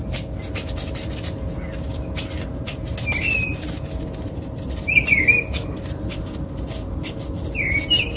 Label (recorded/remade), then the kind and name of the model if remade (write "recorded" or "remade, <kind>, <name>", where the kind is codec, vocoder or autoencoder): recorded